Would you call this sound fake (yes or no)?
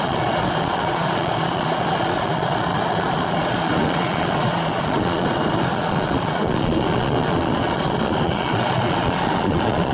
yes